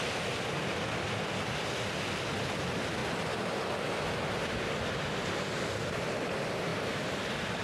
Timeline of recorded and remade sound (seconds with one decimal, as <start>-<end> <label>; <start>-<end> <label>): 0.0-6.7 recorded; 6.7-7.6 remade